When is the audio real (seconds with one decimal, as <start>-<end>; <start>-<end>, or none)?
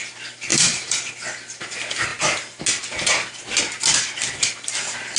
0.0-0.5; 1.1-5.2